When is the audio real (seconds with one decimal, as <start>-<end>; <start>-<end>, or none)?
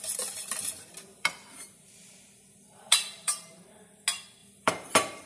0.0-1.1; 3.8-4.4